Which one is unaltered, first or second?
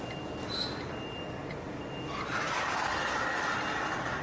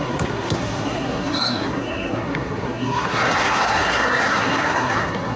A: first